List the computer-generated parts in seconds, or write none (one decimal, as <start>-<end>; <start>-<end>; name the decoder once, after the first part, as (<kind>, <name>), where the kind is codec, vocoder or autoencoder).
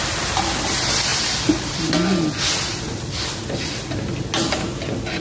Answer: 1.1-1.9 (vocoder, BigVGAN v2); 2.7-3.8